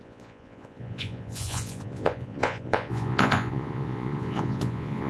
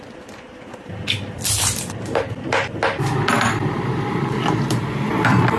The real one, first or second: second